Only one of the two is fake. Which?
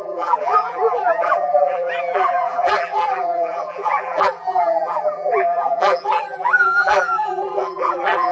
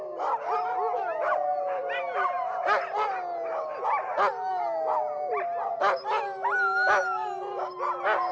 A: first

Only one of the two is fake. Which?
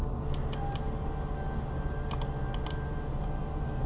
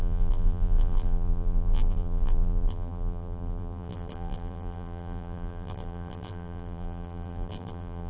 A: second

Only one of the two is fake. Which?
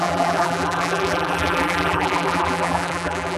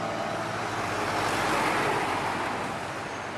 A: first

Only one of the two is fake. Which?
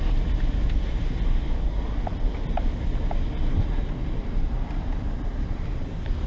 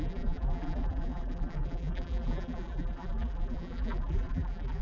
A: second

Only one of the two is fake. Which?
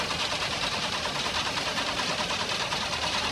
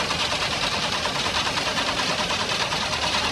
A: first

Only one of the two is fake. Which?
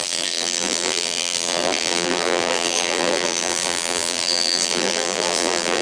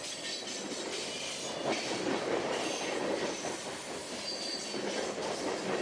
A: first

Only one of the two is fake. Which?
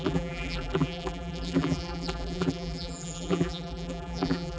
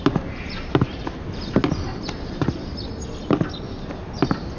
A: first